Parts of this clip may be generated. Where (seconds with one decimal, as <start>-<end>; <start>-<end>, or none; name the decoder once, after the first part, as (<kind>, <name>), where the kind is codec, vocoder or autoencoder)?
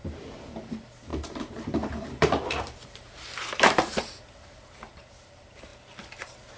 0.0-5.7 (vocoder, BigVGAN v2)